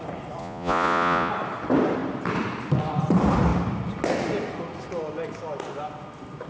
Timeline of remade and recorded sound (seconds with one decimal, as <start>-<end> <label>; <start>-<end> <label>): 0.0-0.4 recorded; 0.4-1.3 remade; 1.3-6.5 recorded